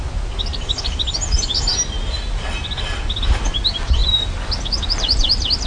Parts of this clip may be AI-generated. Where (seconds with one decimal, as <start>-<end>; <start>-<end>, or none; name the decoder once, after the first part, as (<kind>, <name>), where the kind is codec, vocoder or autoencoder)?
none